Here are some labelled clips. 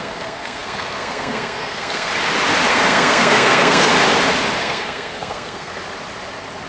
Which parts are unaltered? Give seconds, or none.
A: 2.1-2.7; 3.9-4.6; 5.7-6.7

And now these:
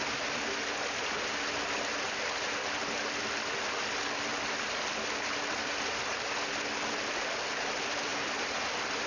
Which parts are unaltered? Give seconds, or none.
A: 0.0-9.1

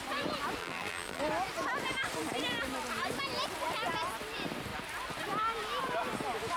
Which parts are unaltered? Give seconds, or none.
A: 0.0-0.6; 1.2-6.6